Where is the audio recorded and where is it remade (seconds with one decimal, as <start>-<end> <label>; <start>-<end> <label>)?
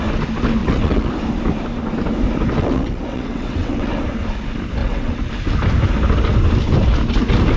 0.0-0.6 recorded; 0.6-1.1 remade; 1.1-2.6 recorded; 2.6-4.0 remade; 4.0-4.8 recorded; 4.8-5.3 remade; 5.3-7.6 recorded